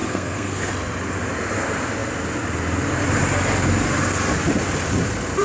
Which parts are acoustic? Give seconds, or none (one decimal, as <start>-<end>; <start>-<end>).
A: 0.7-5.4